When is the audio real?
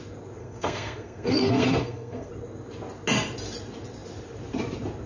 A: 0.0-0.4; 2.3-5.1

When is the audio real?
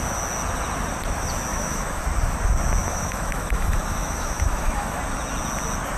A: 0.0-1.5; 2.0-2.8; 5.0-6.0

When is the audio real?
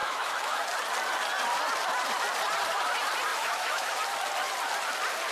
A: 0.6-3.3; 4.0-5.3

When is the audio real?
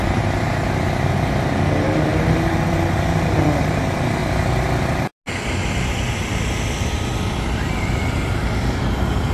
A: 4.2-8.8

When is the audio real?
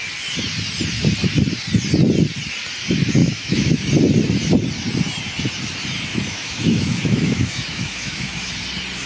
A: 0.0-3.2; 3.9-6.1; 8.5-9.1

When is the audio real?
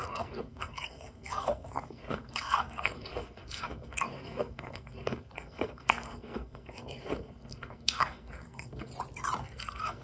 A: 8.9-9.4